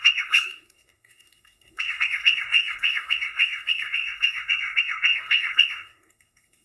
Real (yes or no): no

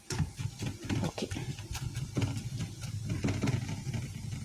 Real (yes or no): yes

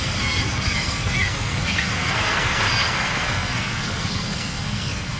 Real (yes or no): no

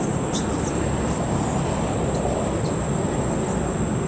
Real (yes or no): yes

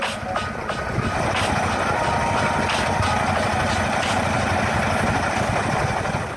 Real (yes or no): yes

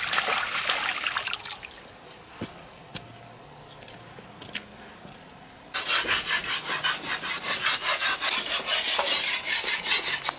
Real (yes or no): yes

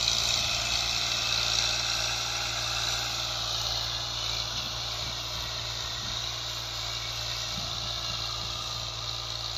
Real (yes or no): yes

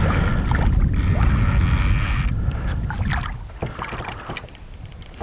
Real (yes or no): yes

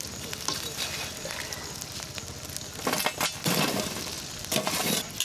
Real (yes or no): yes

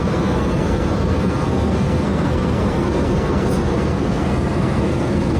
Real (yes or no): no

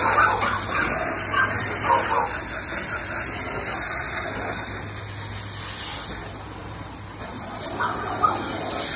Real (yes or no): yes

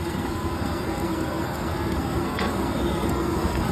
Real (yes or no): no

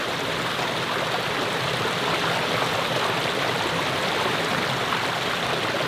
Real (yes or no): yes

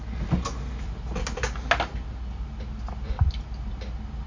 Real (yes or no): yes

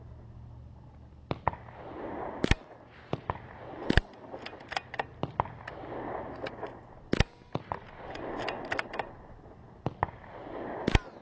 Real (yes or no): yes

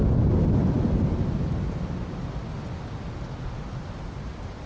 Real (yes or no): yes